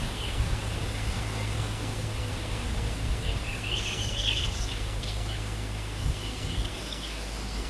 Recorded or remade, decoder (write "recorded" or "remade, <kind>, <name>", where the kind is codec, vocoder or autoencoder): remade, codec, SNAC